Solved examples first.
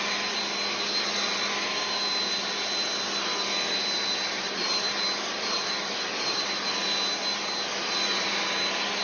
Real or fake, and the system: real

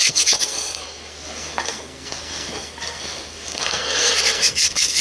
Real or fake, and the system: fake, codec, SNAC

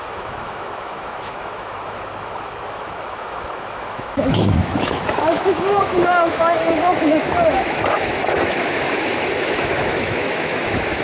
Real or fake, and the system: fake, autoencoder, DAC-VAE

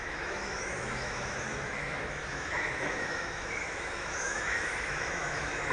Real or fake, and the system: fake, autoencoder, DAC-VAE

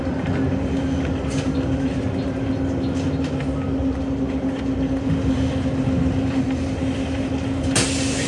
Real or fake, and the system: real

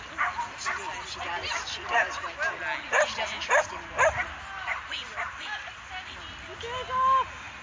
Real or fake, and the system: real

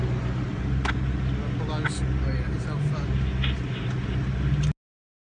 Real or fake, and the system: real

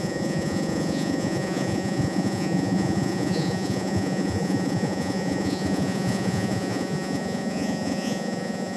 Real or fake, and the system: fake, vocoder, Vocos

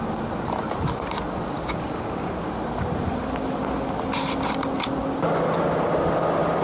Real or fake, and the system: real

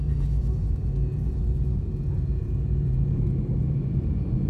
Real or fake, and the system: fake, vocoder, Vocos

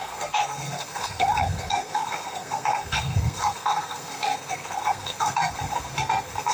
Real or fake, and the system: fake, codec, SNAC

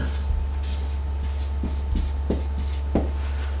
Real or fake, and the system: real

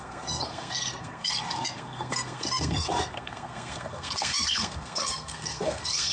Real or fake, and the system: fake, codec, SNAC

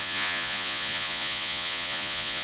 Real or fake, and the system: fake, vocoder, Vocos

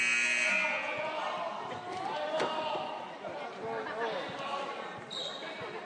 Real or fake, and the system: real